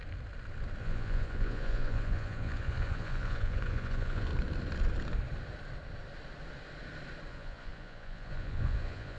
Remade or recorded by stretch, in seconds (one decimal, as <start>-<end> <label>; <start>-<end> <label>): 0.0-0.8 recorded; 0.8-4.3 remade; 4.3-7.3 recorded; 7.3-9.2 remade